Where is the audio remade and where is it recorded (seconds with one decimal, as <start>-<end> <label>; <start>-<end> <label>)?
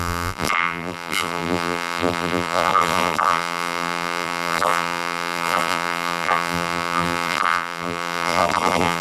0.0-9.0 remade